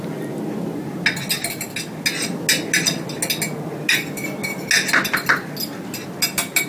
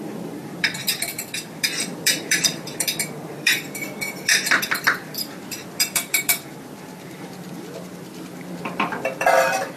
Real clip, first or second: first